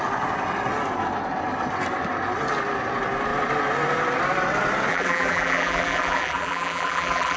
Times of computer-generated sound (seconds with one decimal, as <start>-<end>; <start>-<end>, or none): 4.9-7.4